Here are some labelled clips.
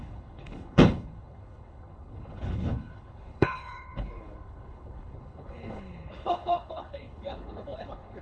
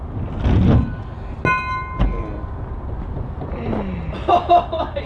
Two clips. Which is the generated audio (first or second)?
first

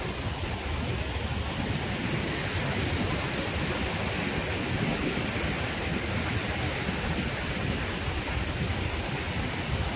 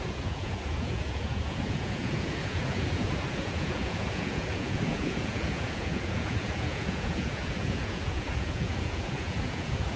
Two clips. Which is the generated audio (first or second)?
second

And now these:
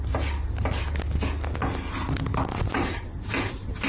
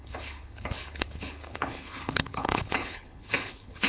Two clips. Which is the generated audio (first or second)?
second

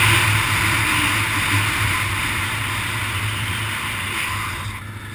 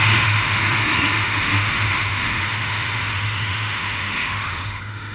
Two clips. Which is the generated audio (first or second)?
second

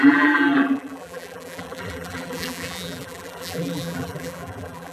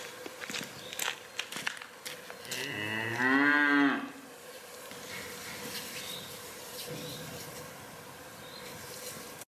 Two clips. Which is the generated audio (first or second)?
first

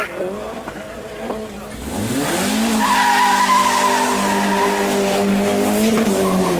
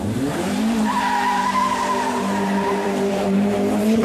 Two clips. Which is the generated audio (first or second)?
second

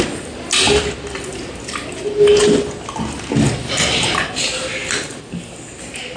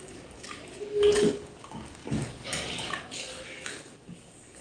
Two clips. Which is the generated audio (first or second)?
second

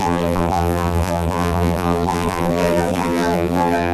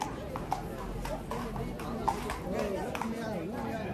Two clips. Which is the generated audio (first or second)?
first